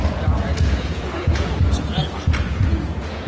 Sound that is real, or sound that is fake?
fake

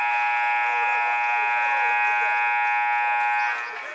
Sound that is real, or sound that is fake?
real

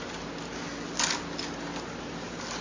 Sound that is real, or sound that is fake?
real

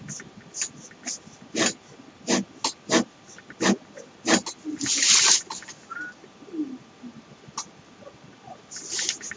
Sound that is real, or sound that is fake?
real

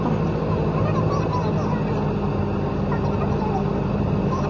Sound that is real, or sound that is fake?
real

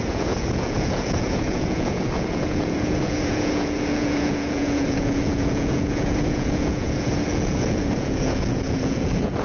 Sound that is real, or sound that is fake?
fake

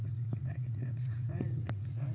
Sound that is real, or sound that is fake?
fake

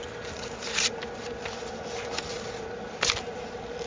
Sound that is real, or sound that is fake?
real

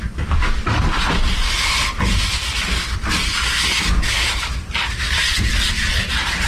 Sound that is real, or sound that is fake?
real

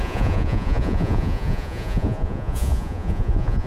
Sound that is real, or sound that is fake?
fake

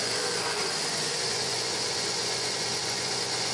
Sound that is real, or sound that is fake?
fake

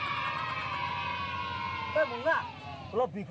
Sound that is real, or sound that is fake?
real